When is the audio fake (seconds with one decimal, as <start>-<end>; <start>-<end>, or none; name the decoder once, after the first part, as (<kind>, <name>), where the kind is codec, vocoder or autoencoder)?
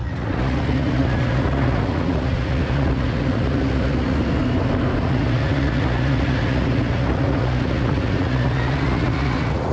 0.0-4.4 (vocoder, Vocos); 5.0-9.7